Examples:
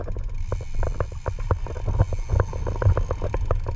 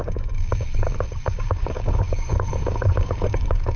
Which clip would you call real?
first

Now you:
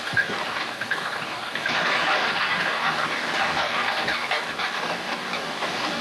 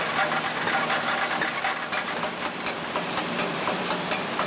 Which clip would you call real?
second